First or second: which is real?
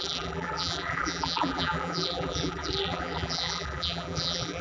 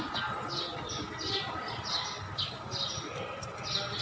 second